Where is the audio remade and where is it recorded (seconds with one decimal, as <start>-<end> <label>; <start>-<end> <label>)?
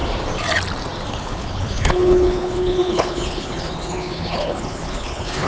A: 0.0-1.1 recorded; 1.1-5.5 remade